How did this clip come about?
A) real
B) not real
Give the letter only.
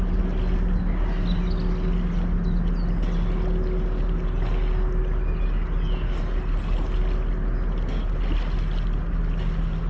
A